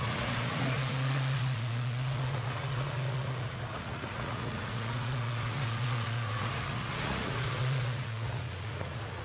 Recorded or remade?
remade